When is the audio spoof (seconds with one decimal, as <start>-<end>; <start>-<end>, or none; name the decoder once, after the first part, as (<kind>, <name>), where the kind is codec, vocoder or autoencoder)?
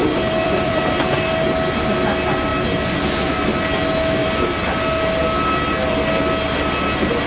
0.0-1.0 (vocoder, BigVGAN v2); 4.2-4.8